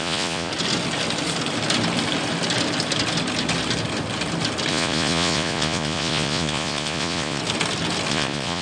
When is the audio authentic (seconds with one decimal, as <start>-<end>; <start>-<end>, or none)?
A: 0.5-4.7; 7.4-8.1

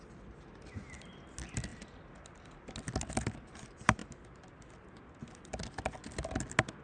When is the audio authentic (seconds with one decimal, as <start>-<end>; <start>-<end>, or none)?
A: 0.0-6.8

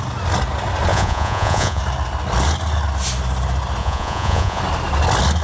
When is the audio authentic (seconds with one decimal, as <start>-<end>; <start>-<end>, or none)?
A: 0.0-0.9; 1.8-3.8; 4.6-5.4

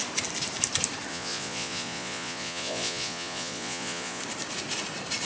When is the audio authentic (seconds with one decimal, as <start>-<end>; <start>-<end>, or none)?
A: 0.0-1.1; 4.2-5.2